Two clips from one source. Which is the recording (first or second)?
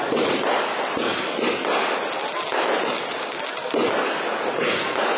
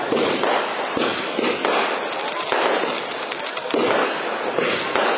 first